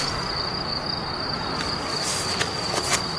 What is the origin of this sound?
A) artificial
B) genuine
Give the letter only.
B